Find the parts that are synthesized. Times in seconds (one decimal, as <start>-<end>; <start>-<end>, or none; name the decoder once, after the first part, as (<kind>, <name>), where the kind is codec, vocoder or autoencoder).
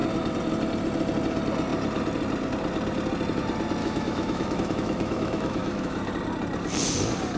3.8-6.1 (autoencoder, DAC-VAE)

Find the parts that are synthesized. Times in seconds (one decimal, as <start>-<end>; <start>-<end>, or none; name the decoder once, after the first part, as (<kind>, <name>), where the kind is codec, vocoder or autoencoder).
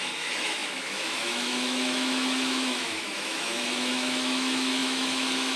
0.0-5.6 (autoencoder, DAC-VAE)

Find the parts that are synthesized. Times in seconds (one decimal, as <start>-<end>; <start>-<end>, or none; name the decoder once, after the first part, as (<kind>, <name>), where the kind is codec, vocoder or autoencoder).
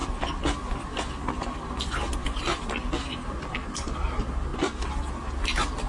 none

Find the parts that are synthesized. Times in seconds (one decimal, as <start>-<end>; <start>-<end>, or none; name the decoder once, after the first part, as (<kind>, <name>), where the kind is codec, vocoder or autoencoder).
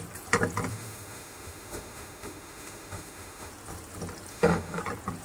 0.7-3.5 (autoencoder, DAC-VAE); 4.3-4.8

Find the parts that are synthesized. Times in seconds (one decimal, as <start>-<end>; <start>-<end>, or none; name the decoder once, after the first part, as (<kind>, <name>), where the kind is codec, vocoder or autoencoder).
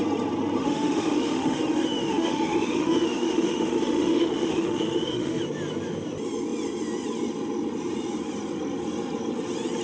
0.6-5.4 (autoencoder, DAC-VAE)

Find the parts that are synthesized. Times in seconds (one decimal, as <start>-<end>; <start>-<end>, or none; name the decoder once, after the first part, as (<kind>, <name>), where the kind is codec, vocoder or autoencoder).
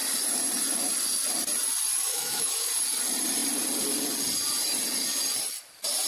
2.1-2.7 (autoencoder, DAC-VAE)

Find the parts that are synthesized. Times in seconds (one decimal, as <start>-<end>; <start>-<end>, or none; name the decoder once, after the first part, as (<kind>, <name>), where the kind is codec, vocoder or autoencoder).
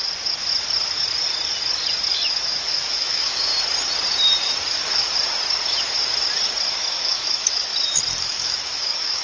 2.1-3.5 (autoencoder, DAC-VAE); 6.9-7.7; 8.2-9.2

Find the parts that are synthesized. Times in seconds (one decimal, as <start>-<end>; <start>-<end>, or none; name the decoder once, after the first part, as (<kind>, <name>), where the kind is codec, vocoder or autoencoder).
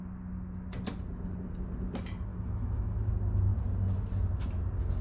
2.3-3.1 (autoencoder, DAC-VAE)